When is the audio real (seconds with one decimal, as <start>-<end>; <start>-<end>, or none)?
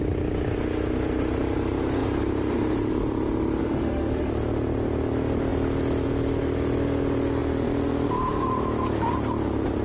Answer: 0.0-3.6; 4.3-9.8